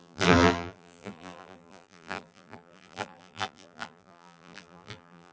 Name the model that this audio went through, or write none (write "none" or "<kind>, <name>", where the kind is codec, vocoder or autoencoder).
vocoder, BigVGAN v2